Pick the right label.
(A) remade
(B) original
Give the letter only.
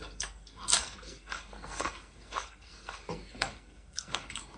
A